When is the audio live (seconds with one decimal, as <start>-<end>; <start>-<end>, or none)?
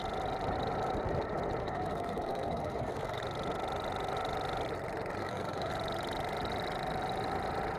0.0-1.6; 3.2-5.2; 5.7-7.8